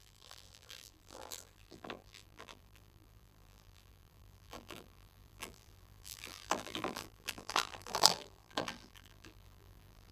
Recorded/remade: remade